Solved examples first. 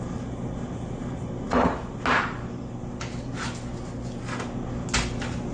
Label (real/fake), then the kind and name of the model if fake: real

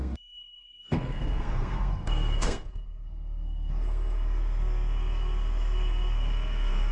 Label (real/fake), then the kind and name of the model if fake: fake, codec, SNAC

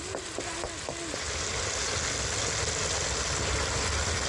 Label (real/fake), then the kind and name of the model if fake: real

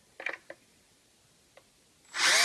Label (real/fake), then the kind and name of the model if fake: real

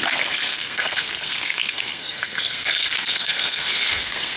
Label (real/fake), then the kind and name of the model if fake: fake, codec, SNAC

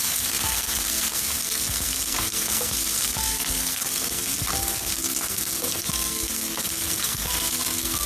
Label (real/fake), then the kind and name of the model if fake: fake, codec, SNAC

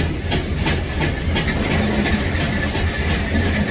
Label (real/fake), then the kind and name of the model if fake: real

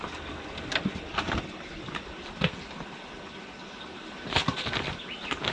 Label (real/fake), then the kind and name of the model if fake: real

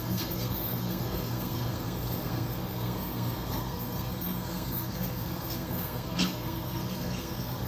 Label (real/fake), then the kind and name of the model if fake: fake, codec, SNAC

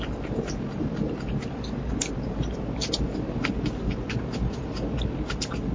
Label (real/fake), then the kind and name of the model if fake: real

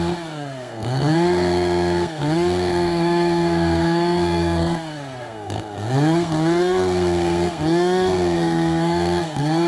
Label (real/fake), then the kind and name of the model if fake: fake, codec, SNAC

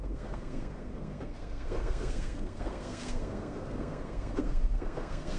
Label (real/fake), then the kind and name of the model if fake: fake, codec, SNAC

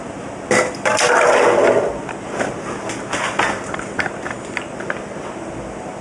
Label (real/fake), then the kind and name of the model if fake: real